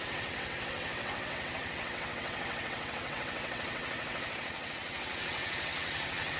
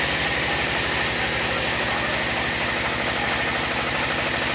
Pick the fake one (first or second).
first